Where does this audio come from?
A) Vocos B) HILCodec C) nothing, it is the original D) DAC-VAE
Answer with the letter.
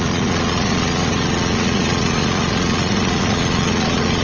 A